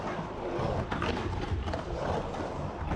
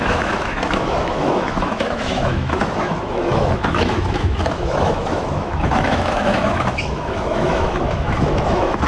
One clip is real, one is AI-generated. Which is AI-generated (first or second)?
second